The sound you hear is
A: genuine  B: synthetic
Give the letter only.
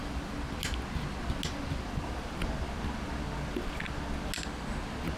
A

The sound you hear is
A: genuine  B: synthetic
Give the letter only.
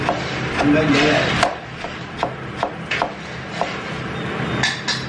A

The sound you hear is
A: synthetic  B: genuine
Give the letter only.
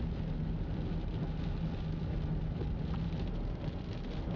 B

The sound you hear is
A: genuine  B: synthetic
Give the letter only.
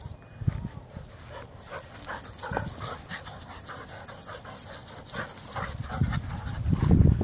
A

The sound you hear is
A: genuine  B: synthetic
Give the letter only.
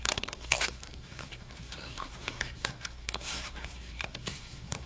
B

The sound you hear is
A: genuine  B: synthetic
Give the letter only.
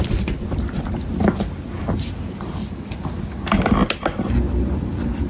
A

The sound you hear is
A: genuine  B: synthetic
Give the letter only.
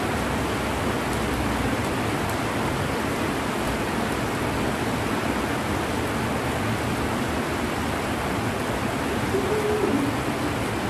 A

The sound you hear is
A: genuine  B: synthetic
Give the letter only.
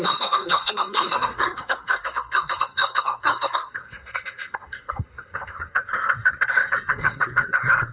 B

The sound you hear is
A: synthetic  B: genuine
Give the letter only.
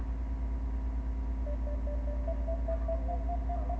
B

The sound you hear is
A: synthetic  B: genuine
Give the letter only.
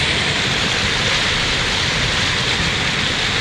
B